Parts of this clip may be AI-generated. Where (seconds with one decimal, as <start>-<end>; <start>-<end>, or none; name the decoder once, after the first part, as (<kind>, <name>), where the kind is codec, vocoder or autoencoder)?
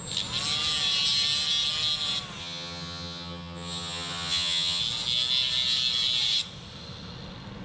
2.4-4.8 (vocoder, HiFi-GAN)